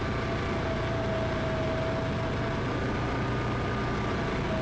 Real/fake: real